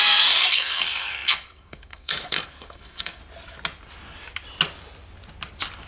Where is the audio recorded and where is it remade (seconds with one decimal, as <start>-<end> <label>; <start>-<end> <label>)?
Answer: 0.0-3.2 remade; 3.2-5.9 recorded